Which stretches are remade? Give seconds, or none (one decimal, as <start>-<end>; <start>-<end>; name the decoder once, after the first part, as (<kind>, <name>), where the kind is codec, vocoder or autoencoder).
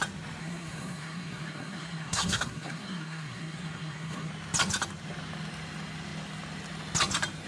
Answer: 0.4-4.3 (codec, SNAC)